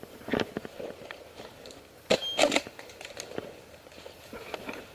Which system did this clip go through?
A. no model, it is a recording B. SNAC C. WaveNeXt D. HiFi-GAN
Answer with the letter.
A